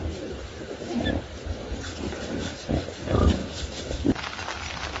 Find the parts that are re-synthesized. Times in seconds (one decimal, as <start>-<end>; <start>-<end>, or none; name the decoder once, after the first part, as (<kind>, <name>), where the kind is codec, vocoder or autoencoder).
1.6-2.7 (vocoder, BigVGAN v2); 3.4-4.0